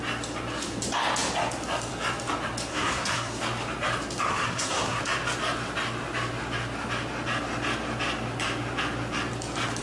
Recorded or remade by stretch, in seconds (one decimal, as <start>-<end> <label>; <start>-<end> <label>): 0.0-2.7 recorded; 2.7-3.4 remade; 3.4-4.3 recorded; 4.3-5.0 remade; 5.0-9.8 recorded